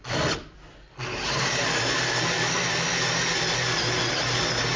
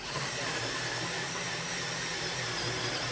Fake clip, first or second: second